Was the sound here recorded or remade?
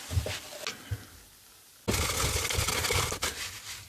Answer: recorded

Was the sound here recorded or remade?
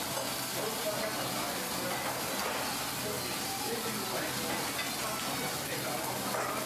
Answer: recorded